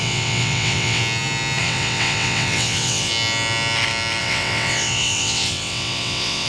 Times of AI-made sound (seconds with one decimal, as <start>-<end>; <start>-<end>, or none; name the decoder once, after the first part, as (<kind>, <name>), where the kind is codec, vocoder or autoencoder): 0.0-1.0 (vocoder, WaveNeXt); 1.6-3.1; 4.2-6.5

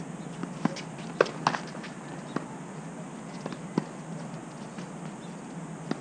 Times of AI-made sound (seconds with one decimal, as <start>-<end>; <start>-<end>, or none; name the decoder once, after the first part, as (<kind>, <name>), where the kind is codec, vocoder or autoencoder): none

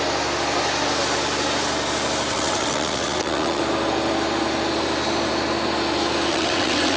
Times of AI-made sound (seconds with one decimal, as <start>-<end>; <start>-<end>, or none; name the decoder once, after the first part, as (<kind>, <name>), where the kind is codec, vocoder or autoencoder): 2.3-3.6 (vocoder, WaveNeXt); 6.3-7.0

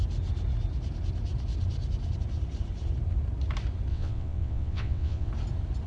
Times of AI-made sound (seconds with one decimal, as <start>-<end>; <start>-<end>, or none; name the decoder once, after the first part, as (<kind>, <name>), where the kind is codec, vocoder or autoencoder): 3.9-5.3 (vocoder, WaveNeXt)

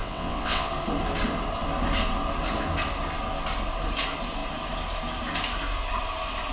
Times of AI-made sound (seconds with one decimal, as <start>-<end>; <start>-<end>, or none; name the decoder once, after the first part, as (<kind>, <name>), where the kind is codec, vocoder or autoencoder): 0.0-0.7 (vocoder, WaveNeXt)

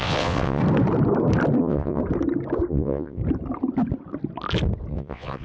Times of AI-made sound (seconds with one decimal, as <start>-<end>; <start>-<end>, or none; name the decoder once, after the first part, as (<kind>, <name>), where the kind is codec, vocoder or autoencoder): 0.0-0.6 (vocoder, WaveNeXt); 1.6-2.0; 2.7-3.2; 4.9-5.4

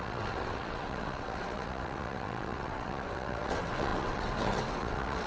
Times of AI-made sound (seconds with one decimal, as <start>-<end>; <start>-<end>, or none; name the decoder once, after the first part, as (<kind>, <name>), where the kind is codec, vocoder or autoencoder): 0.0-5.3 (vocoder, WaveNeXt)